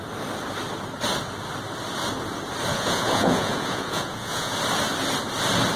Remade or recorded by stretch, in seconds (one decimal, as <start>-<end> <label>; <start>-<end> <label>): 0.0-2.7 recorded; 2.7-4.5 remade; 4.5-5.8 recorded